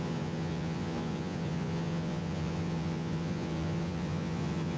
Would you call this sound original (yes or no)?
no